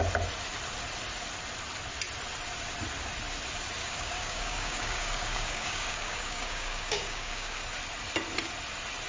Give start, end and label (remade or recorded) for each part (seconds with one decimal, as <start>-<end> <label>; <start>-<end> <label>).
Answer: 0.0-3.8 recorded; 3.8-7.6 remade; 7.6-9.1 recorded